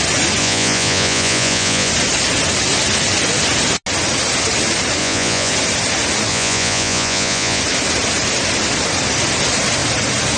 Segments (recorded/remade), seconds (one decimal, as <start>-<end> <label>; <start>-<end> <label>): 0.0-0.4 recorded; 0.4-1.9 remade; 1.9-5.0 recorded; 5.0-5.5 remade; 5.5-6.3 recorded; 6.3-7.6 remade; 7.6-10.4 recorded